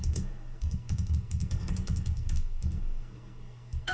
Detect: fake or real fake